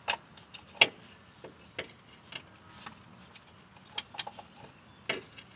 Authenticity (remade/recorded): recorded